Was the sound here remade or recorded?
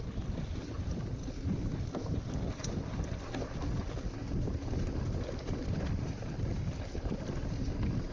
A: recorded